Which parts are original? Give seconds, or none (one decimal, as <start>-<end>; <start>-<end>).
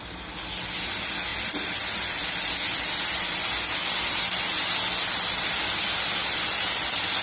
0.0-7.2